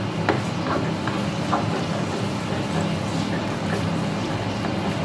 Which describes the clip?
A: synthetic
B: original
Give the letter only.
B